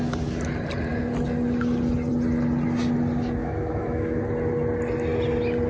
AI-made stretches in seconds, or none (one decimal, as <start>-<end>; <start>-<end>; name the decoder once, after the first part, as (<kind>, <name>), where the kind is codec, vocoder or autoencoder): 3.4-4.2 (autoencoder, DAC-VAE)